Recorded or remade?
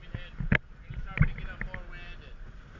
recorded